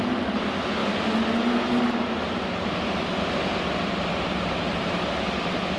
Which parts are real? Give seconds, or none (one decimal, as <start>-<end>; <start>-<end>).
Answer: 0.0-4.1; 5.1-5.8